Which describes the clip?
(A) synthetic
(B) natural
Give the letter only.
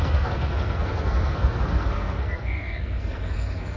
A